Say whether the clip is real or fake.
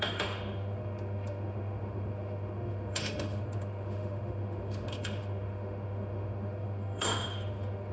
fake